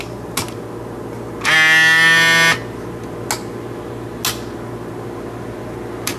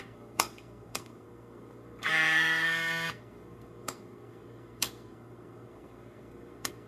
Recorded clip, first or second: first